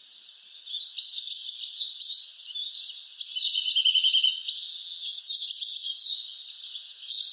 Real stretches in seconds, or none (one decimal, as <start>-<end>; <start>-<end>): 0.0-7.3